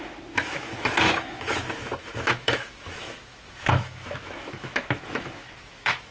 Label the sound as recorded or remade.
remade